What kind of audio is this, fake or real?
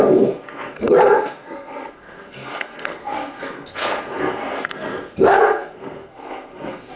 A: fake